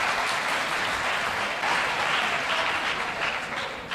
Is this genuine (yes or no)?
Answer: yes